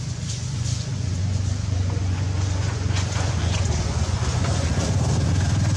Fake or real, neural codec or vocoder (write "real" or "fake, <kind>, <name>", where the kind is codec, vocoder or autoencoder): fake, vocoder, Vocos